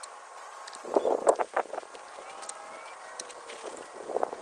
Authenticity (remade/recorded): recorded